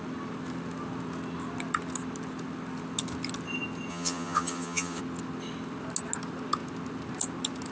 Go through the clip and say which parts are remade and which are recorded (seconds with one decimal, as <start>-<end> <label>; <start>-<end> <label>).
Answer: 0.0-3.9 recorded; 3.9-5.0 remade; 5.0-7.7 recorded